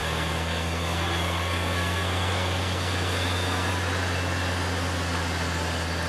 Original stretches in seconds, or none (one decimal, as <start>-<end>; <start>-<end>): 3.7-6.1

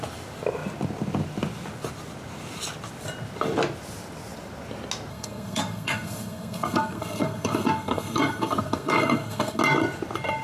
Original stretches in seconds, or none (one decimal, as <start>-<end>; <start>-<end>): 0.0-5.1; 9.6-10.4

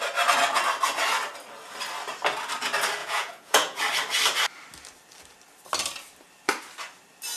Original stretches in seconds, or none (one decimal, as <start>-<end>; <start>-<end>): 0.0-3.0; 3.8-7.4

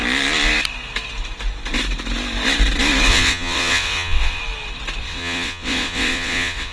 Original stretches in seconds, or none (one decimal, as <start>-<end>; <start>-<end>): 0.0-3.1; 4.4-5.0